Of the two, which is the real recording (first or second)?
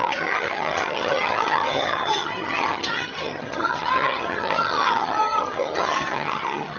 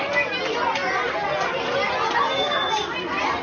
second